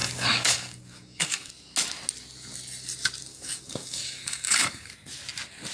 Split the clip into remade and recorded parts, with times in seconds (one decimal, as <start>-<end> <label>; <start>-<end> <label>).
0.0-1.5 remade; 1.5-3.3 recorded; 3.3-4.9 remade; 4.9-5.7 recorded